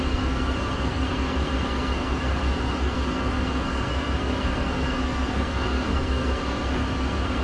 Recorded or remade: remade